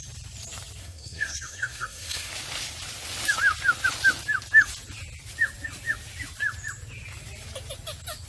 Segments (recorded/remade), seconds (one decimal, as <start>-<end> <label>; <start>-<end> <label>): 0.0-0.8 recorded; 0.8-2.3 remade; 2.3-8.3 recorded